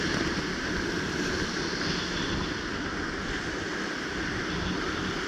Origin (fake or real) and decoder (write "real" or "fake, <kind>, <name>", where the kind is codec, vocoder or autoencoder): real